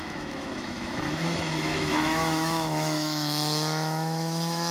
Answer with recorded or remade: remade